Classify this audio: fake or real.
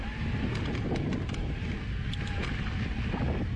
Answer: real